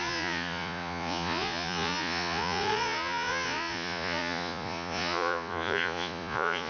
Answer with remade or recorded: remade